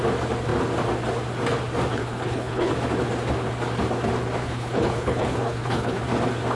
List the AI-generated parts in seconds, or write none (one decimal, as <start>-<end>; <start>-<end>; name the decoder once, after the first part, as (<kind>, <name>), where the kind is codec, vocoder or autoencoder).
1.9-2.7 (codec, HILCodec); 4.4-6.0

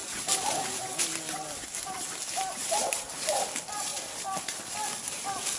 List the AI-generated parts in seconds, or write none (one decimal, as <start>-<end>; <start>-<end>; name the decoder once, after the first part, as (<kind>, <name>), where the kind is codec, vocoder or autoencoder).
none

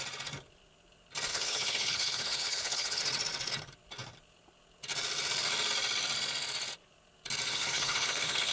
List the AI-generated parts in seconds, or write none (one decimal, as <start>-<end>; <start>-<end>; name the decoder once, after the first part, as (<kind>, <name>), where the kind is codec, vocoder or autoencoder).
1.3-3.0 (codec, HILCodec); 7.5-8.5

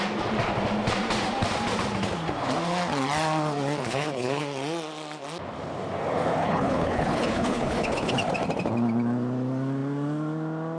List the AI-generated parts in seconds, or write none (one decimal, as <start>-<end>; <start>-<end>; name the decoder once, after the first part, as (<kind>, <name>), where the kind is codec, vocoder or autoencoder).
3.8-4.4 (codec, HILCodec); 6.4-8.1

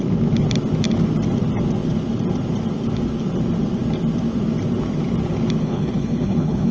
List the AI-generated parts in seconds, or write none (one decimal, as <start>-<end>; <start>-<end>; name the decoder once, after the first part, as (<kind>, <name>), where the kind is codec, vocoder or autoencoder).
5.6-6.7 (codec, HILCodec)